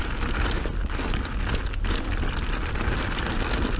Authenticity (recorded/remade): recorded